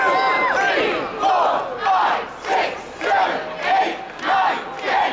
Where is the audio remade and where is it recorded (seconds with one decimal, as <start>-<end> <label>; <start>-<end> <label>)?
0.0-5.1 recorded